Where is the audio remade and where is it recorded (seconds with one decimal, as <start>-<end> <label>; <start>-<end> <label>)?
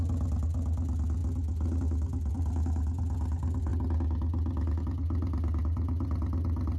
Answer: 0.0-6.8 recorded